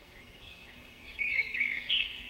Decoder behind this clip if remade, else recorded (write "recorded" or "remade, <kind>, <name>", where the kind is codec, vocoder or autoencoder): remade, codec, SNAC